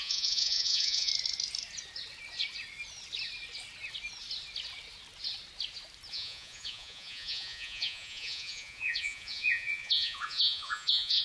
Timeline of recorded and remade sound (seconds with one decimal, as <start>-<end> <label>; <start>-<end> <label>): 0.0-1.1 remade; 1.1-6.1 recorded; 6.1-11.2 remade

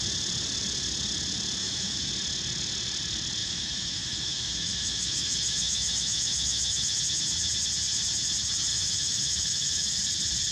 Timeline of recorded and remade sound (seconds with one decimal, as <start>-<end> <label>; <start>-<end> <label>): 0.0-1.6 recorded; 1.6-2.1 remade; 2.1-3.4 recorded; 3.4-7.0 remade; 7.0-8.7 recorded; 8.7-10.0 remade; 10.0-10.5 recorded

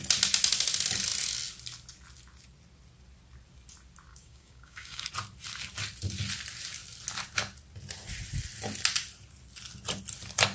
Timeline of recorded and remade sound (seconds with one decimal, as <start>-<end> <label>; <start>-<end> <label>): 0.0-4.1 recorded; 4.1-5.1 remade; 5.1-10.5 recorded

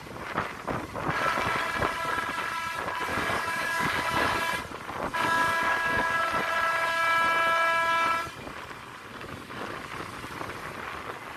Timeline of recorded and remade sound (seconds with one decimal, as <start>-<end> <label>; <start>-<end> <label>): 0.0-3.1 recorded; 3.1-4.4 remade; 4.4-5.1 recorded; 5.1-6.2 remade; 6.2-9.1 recorded; 9.1-9.8 remade; 9.8-11.4 recorded